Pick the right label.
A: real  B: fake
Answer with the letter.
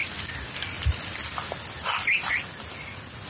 A